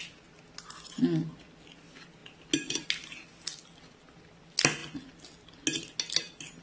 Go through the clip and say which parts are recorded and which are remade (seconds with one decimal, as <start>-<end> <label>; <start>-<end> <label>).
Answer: 0.0-6.6 recorded